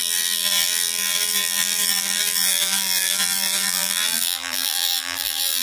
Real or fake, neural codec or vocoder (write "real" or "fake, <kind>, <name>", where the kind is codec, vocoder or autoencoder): fake, vocoder, BigVGAN v2